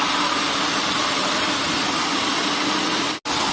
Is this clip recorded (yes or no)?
yes